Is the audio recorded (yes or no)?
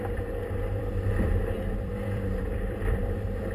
no